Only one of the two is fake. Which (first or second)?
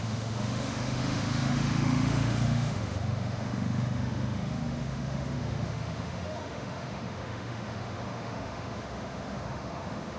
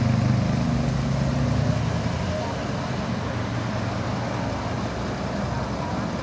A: first